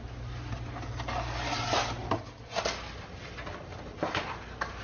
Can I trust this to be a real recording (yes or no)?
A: yes